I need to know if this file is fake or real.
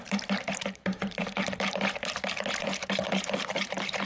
fake